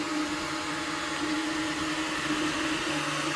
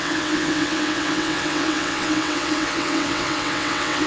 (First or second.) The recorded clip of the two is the first